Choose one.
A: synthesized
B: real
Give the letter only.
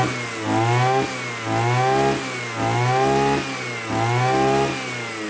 B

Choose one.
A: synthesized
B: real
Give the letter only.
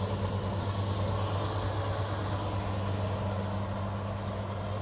B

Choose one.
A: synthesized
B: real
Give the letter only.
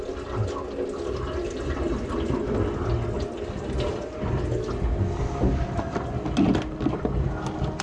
B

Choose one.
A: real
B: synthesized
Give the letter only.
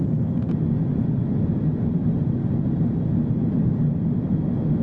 A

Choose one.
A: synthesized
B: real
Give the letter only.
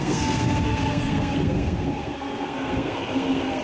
A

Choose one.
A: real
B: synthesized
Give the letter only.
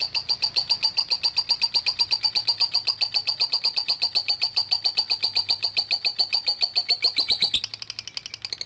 A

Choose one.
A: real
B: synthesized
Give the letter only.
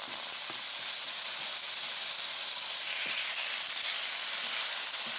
A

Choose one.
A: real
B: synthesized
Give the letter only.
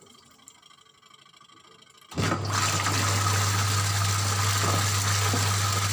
A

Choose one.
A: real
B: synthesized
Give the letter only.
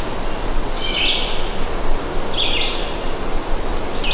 A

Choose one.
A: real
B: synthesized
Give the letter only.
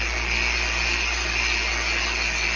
A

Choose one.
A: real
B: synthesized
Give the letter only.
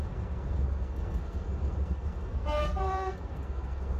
B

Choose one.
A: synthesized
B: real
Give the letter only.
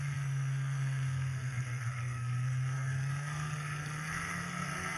A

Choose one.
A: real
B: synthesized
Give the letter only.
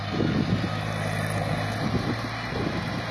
A